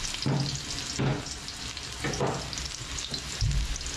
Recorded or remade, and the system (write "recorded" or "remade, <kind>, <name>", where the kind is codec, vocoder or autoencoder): recorded